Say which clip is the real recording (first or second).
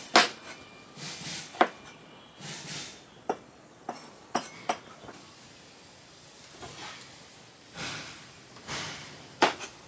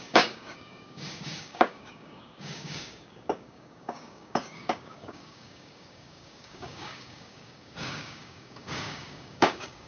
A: first